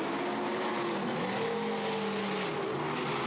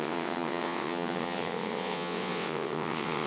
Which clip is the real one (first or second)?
first